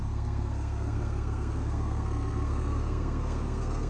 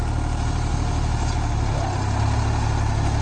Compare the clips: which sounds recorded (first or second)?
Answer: second